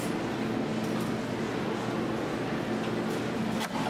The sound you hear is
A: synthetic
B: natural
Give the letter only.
B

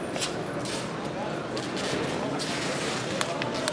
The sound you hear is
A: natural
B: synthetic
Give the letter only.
A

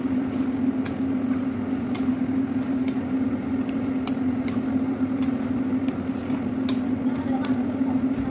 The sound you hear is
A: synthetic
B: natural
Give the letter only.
B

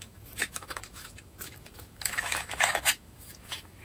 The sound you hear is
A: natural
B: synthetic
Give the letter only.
B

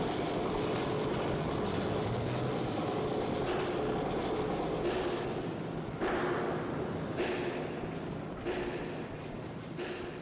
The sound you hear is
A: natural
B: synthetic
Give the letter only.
A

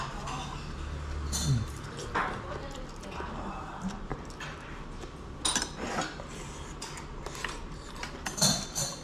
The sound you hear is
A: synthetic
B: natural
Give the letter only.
B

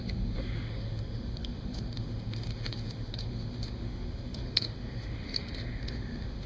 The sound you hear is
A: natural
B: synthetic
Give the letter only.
B